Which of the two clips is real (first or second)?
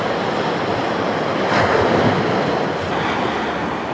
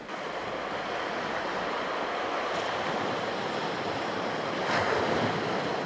first